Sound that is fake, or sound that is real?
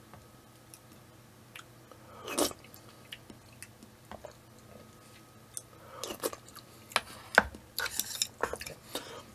real